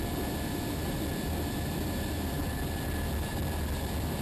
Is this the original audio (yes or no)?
no